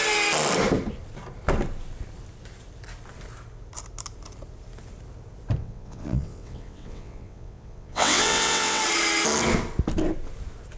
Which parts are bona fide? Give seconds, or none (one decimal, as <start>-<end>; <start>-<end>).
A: 0.0-5.6; 8.8-10.8

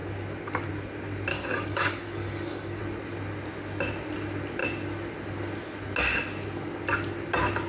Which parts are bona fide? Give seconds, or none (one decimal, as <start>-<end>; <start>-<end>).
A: 0.0-1.3; 2.8-7.7